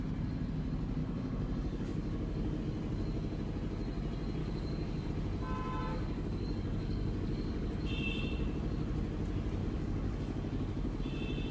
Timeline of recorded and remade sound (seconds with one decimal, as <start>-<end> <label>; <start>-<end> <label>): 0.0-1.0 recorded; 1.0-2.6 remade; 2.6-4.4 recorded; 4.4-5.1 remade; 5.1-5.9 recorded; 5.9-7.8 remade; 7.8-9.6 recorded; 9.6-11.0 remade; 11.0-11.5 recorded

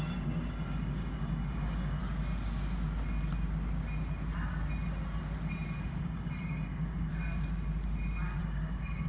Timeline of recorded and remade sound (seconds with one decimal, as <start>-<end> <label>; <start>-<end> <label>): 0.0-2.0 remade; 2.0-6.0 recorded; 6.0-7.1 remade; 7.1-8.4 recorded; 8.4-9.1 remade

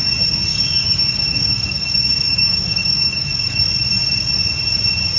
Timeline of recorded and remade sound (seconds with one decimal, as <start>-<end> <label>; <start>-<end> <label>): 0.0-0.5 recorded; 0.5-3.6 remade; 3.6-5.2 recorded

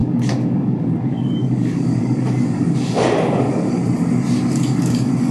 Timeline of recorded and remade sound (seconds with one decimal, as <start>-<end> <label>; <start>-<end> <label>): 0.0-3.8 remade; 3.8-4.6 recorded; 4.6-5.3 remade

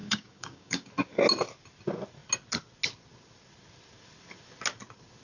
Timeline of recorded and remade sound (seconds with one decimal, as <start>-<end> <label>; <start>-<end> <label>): 0.0-0.9 remade; 0.9-5.2 recorded

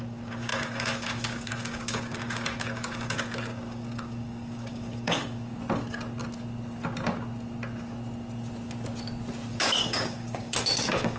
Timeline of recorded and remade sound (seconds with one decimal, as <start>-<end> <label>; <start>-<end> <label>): 0.0-5.5 remade; 5.5-9.5 recorded; 9.5-11.2 remade

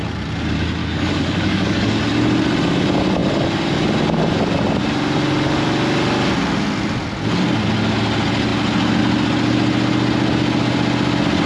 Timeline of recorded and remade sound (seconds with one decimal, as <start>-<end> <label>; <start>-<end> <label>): 0.0-0.8 recorded; 0.8-2.0 remade; 2.0-11.5 recorded

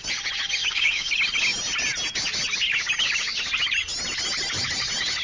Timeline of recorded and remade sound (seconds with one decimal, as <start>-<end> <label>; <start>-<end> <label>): 0.0-0.6 recorded; 0.6-1.1 remade; 1.1-5.2 recorded